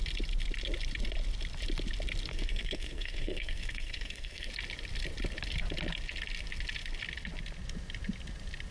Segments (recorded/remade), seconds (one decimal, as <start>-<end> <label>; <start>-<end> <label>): 0.0-2.3 recorded; 2.3-4.5 remade; 4.5-8.7 recorded